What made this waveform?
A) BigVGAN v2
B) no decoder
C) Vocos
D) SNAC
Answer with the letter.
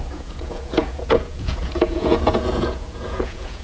C